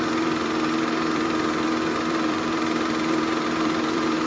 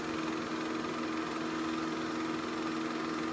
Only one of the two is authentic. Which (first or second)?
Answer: second